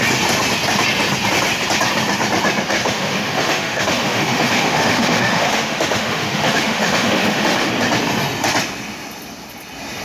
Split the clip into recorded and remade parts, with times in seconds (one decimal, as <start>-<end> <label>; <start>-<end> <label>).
0.0-2.8 recorded; 2.8-7.7 remade; 7.7-10.0 recorded